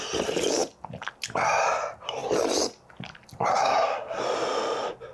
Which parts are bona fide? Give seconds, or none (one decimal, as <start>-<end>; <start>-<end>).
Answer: 0.0-3.5; 4.2-5.1

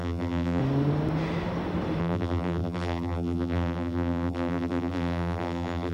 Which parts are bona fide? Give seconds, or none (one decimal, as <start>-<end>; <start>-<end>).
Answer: 0.6-2.0

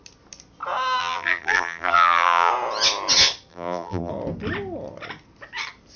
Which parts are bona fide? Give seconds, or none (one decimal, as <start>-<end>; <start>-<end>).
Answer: 0.0-1.0; 2.5-3.5; 4.1-6.0

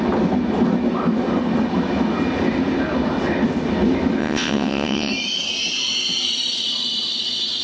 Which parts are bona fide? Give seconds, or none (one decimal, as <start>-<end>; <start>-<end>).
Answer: 0.0-4.2; 5.1-7.6